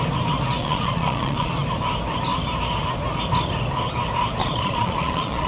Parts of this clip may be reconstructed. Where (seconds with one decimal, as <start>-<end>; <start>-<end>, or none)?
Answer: 0.6-1.5; 4.4-5.5

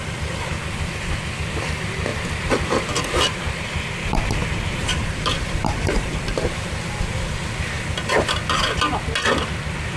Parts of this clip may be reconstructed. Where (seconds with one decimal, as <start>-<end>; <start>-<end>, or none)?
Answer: 4.4-7.0

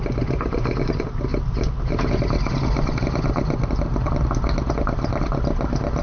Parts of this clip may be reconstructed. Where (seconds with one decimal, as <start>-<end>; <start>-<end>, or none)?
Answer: none

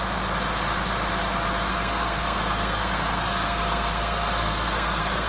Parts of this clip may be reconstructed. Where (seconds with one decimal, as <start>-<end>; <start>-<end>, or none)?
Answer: 1.7-5.3

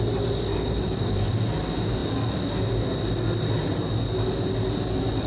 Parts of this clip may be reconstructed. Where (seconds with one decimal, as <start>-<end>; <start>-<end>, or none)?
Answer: 0.5-1.3